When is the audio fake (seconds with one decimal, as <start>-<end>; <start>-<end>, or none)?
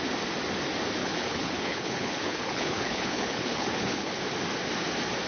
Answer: 1.0-4.2